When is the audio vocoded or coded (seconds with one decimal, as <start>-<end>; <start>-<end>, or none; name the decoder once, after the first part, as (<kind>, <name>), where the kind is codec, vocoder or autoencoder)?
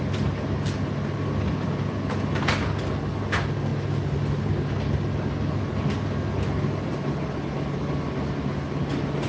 none